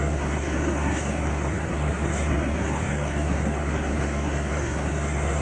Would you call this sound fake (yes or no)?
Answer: yes